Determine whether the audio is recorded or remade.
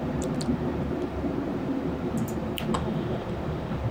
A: remade